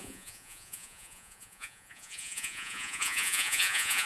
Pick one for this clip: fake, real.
fake